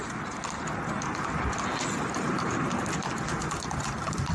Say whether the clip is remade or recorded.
recorded